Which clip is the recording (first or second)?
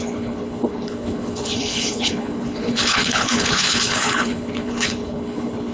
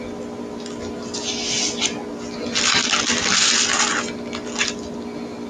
second